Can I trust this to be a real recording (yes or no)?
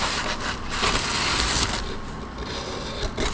yes